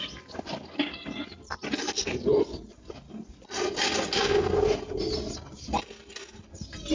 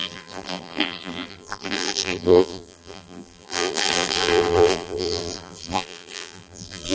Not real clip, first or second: second